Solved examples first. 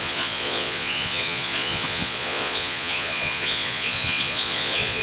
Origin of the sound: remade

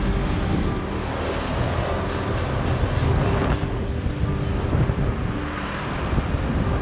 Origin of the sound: recorded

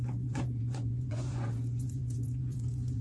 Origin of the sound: remade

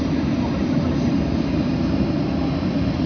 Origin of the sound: recorded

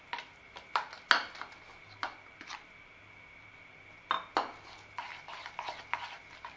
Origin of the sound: recorded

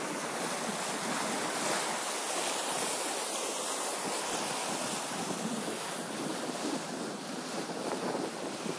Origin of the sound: recorded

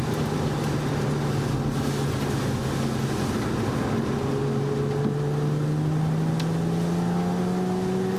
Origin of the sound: recorded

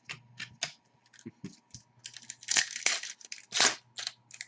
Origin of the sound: recorded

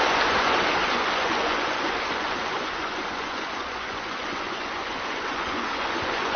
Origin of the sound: remade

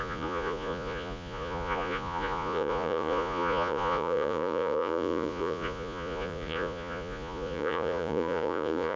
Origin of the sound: remade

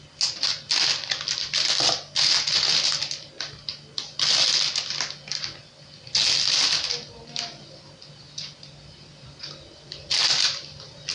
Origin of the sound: recorded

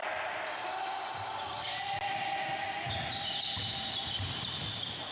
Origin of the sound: recorded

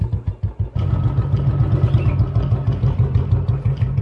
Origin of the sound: recorded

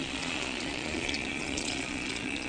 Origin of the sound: remade